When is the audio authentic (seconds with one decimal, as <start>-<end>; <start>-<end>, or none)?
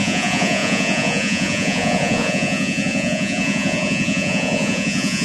none